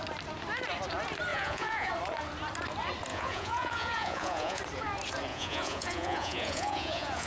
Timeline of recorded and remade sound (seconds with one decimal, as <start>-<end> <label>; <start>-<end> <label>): 0.0-1.3 recorded; 1.3-1.9 remade; 1.9-3.1 recorded; 3.1-4.6 remade; 4.6-5.3 recorded; 5.3-7.3 remade